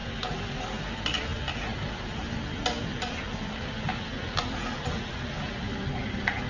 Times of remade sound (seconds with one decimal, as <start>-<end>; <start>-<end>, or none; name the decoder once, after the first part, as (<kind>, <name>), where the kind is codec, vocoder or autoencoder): none